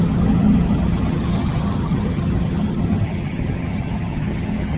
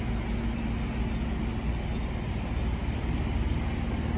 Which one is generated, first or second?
first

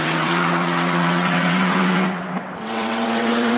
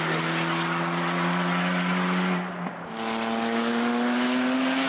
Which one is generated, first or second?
first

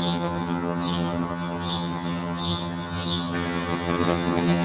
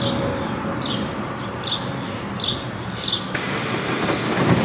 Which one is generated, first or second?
first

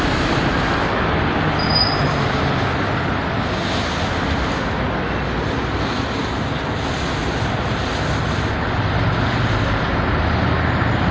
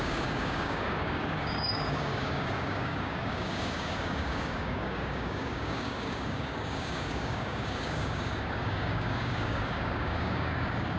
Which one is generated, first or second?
second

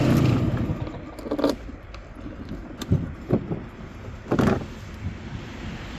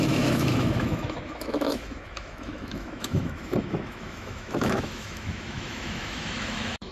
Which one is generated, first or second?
second